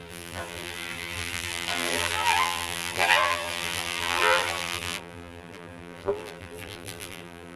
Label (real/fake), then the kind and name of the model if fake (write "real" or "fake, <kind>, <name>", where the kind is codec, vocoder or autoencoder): fake, vocoder, BigVGAN v2